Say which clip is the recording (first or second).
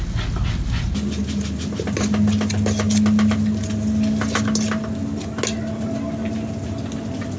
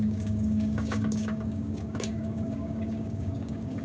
first